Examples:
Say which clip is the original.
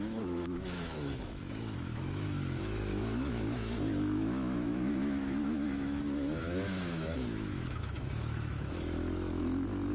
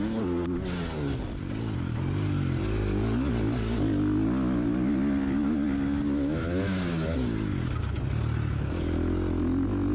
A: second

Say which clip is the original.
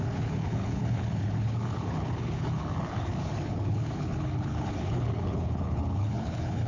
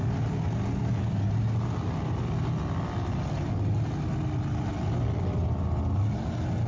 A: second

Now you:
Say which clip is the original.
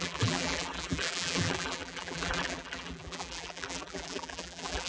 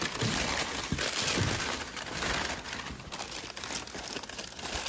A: second